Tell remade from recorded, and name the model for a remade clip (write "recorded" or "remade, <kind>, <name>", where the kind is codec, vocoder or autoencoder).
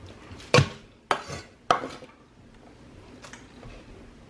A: recorded